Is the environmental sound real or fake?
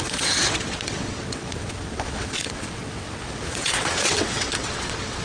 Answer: fake